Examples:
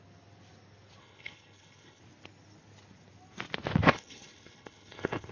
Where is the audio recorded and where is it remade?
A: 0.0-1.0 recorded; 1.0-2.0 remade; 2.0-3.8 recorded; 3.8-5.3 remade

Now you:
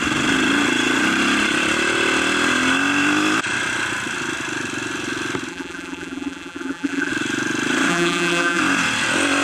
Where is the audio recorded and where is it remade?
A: 0.0-5.5 recorded; 5.5-7.1 remade; 7.1-7.9 recorded; 7.9-8.6 remade; 8.6-9.4 recorded

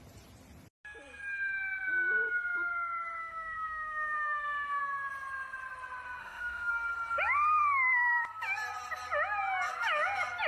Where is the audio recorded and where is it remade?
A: 0.0-3.2 recorded; 3.2-4.8 remade; 4.8-6.2 recorded; 6.2-6.7 remade; 6.7-10.5 recorded

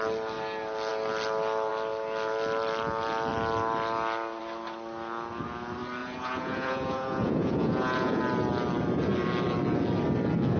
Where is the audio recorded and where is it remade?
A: 0.0-6.0 recorded; 6.0-8.2 remade; 8.2-10.6 recorded

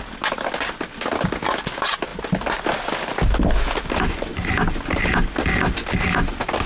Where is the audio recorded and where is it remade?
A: 0.0-2.1 recorded; 2.1-2.9 remade; 2.9-6.7 recorded

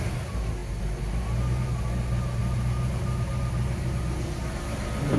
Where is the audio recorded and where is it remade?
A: 0.0-5.2 recorded